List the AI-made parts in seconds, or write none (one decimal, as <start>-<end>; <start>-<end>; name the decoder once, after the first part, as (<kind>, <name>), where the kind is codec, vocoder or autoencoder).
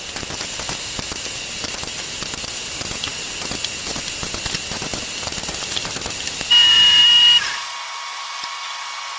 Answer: 5.5-7.0 (vocoder, BigVGAN v2)